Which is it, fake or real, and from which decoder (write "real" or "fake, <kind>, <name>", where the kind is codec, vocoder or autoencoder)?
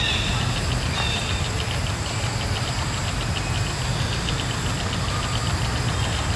real